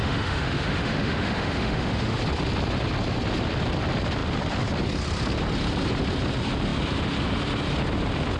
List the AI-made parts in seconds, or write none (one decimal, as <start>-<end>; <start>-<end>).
0.0-2.2